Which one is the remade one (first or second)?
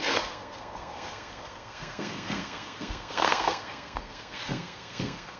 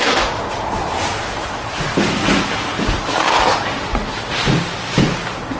first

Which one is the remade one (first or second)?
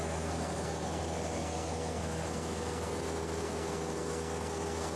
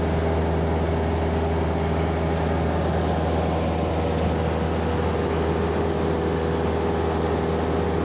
first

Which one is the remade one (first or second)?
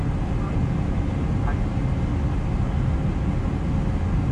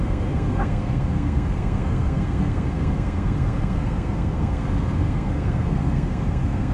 second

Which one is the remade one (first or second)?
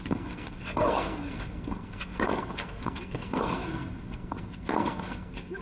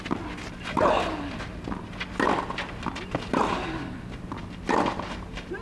first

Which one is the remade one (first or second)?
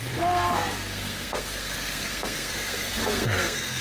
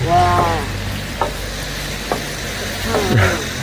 first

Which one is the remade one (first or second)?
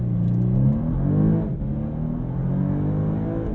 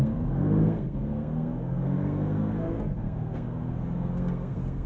second